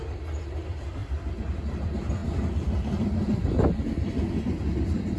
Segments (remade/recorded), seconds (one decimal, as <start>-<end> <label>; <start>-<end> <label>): 0.0-1.0 recorded; 1.0-1.6 remade; 1.6-2.2 recorded; 2.2-3.8 remade; 3.8-5.2 recorded